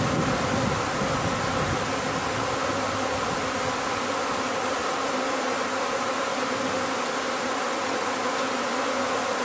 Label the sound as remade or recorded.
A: recorded